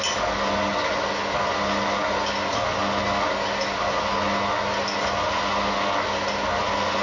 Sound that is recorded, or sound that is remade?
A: recorded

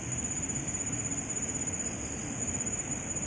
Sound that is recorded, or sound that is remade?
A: recorded